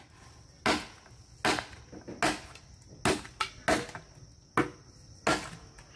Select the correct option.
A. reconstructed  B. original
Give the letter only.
B